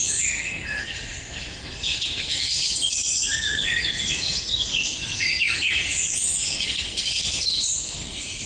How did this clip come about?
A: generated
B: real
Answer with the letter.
A